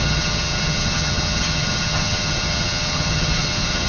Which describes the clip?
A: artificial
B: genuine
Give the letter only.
A